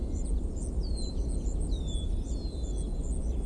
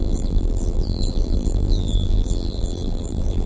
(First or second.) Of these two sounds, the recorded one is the first